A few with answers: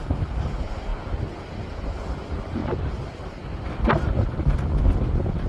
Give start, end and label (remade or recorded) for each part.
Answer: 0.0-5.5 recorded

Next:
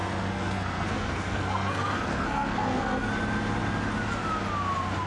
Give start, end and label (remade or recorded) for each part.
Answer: 0.0-3.1 remade; 3.1-5.1 recorded

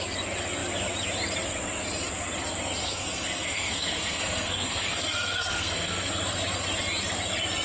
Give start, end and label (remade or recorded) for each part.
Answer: 0.0-2.8 recorded; 2.8-6.1 remade; 6.1-7.6 recorded

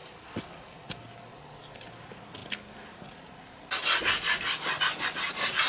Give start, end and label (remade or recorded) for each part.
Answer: 0.0-5.7 recorded

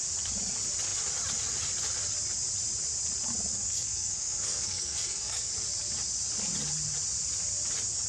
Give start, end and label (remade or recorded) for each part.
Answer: 0.0-3.5 recorded; 3.5-5.5 remade; 5.5-8.1 recorded

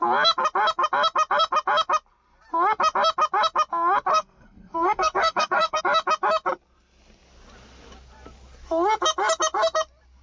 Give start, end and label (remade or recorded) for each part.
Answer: 0.0-4.1 recorded; 4.1-5.8 remade; 5.8-10.2 recorded